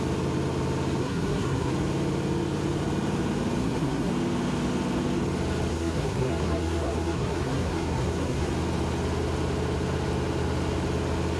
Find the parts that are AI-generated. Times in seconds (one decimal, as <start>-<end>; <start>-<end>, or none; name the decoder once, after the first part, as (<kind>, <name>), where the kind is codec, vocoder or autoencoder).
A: 1.0-1.7 (codec, SNAC); 3.6-4.1; 5.7-8.5